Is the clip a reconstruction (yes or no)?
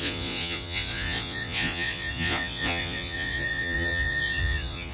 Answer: yes